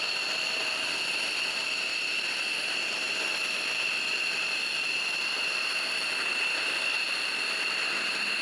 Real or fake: fake